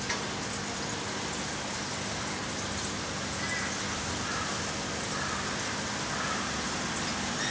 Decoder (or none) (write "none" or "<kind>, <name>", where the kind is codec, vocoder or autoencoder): none